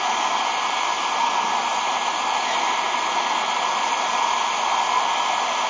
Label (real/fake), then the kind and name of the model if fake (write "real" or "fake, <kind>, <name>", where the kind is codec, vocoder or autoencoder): real